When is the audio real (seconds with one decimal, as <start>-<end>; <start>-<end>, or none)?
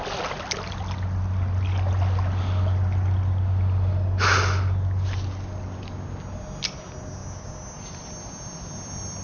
0.0-9.2